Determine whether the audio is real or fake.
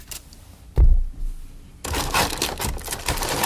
real